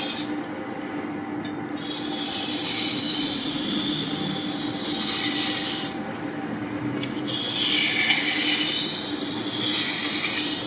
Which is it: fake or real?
real